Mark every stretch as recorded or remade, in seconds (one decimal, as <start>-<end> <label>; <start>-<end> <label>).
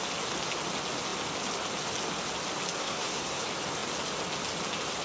0.0-2.8 recorded; 2.8-3.4 remade; 3.4-5.0 recorded